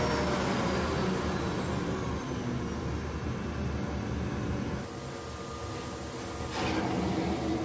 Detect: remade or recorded recorded